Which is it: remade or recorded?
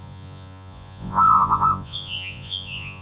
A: remade